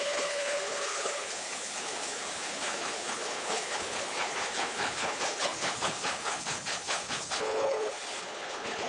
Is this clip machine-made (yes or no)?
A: yes